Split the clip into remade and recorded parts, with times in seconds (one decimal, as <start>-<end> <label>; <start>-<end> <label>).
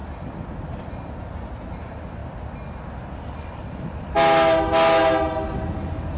0.0-6.2 recorded